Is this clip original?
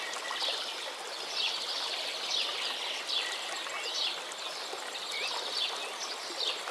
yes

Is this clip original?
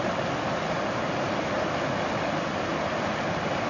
yes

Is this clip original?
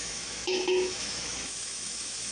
no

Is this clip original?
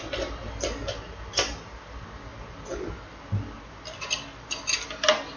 yes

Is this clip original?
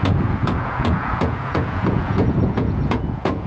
no